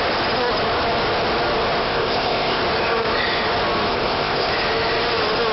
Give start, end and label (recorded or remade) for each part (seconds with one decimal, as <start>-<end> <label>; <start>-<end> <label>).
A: 0.0-1.8 recorded; 1.8-2.6 remade; 2.6-3.9 recorded; 3.9-4.5 remade; 4.5-5.5 recorded